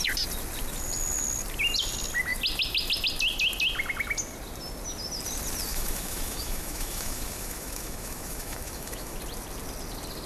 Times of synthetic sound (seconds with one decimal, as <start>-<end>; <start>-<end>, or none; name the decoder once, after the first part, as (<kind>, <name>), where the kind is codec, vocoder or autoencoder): 5.7-9.2 (autoencoder, DAC-VAE)